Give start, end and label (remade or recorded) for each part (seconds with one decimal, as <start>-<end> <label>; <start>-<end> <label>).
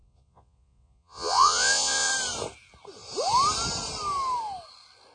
0.0-2.1 remade; 2.1-5.1 recorded